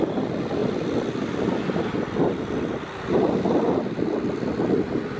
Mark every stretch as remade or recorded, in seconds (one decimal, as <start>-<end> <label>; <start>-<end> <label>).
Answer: 0.0-5.2 recorded